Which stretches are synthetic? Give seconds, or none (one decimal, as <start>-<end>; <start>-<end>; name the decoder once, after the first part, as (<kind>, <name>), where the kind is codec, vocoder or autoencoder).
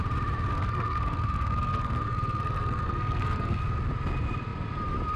0.5-3.6 (codec, SNAC)